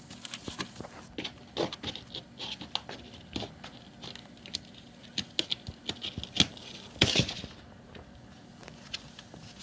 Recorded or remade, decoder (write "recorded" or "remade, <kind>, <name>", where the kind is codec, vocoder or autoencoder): recorded